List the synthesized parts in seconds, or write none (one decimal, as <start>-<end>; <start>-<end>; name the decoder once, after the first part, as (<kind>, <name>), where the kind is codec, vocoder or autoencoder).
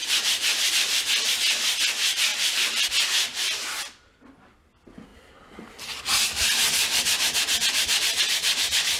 0.0-0.7 (vocoder, BigVGAN v2); 2.3-4.2